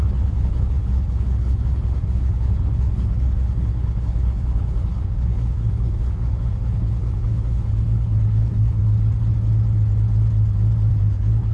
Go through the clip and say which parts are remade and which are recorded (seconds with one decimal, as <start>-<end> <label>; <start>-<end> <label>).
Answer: 0.0-8.8 remade; 8.8-10.9 recorded; 10.9-11.5 remade